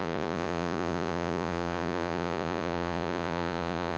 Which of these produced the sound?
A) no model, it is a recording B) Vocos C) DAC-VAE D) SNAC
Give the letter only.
B